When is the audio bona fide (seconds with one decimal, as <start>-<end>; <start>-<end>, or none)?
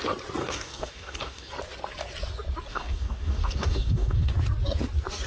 0.0-0.4; 1.5-2.7; 4.3-5.3